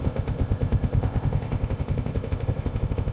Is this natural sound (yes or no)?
no